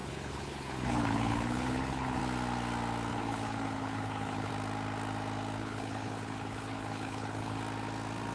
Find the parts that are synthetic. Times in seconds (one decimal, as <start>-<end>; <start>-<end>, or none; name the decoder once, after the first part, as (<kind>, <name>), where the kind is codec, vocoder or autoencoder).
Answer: 0.0-2.2 (codec, HILCodec); 3.1-4.5; 5.6-7.6